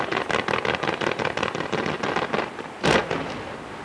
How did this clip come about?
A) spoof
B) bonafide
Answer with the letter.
B